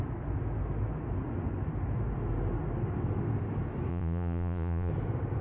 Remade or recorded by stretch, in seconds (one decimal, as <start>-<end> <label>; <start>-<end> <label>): 0.0-3.9 recorded; 3.9-4.9 remade; 4.9-5.4 recorded